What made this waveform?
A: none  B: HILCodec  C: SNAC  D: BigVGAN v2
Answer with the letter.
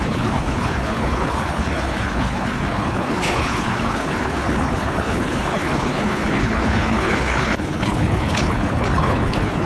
B